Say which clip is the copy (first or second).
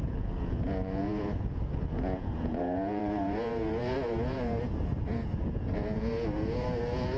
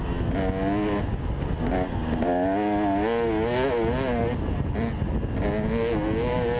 first